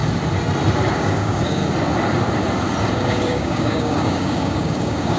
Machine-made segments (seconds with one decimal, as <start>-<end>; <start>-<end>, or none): 0.9-1.6; 2.9-5.2